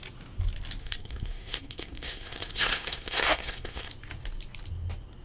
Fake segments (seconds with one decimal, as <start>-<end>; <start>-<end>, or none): 0.8-3.9